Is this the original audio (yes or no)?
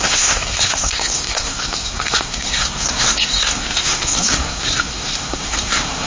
no